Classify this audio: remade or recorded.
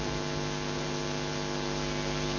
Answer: recorded